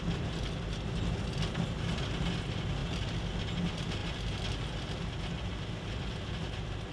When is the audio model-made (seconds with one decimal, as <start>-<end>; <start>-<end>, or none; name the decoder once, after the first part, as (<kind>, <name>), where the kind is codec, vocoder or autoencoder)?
none